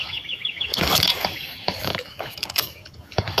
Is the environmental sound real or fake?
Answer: fake